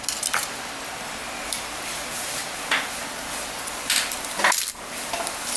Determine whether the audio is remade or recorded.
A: recorded